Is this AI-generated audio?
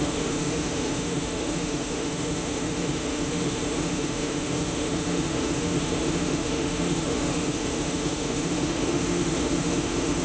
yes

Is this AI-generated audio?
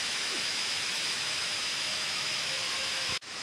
yes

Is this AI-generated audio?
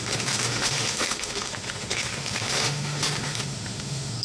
yes